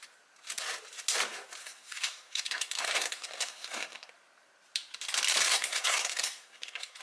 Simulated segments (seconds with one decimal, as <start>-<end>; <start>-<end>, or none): 1.6-4.1; 5.5-7.0